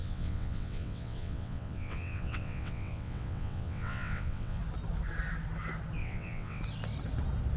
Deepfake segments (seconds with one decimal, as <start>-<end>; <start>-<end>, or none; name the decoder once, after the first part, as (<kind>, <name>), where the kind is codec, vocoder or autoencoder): 0.0-4.6 (vocoder, WaveNeXt); 6.0-6.6